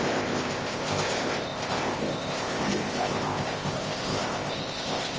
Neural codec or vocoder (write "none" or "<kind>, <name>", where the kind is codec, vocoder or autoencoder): codec, ZipCodec